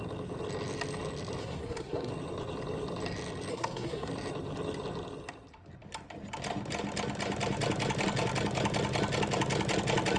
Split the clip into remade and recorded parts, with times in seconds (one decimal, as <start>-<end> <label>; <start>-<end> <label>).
0.0-1.4 recorded; 1.4-2.1 remade; 2.1-3.5 recorded; 3.5-4.1 remade; 4.1-10.2 recorded